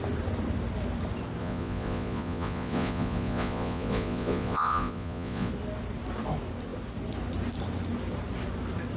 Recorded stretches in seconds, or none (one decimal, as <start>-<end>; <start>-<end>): 0.0-1.4; 5.5-9.0